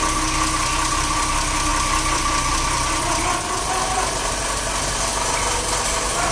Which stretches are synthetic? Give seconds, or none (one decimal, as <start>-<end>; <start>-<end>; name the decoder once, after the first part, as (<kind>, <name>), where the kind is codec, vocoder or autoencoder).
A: 1.7-3.2 (vocoder, BigVGAN v2)